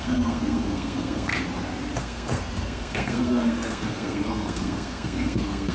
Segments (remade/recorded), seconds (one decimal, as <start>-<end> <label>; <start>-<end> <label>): 0.0-1.3 remade; 1.3-2.0 recorded; 2.0-5.7 remade